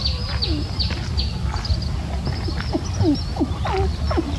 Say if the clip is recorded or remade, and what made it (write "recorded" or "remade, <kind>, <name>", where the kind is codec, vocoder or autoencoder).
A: recorded